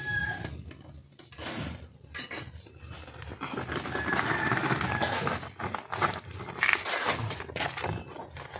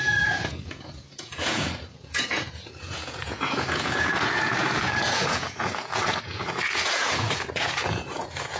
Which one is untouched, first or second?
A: first